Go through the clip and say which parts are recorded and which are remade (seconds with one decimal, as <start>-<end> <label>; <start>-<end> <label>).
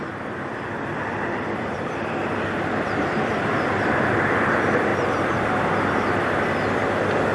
0.0-2.2 remade; 2.2-3.0 recorded; 3.0-7.3 remade